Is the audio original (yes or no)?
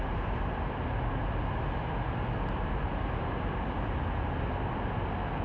yes